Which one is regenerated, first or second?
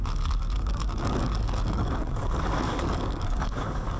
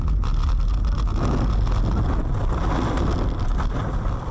first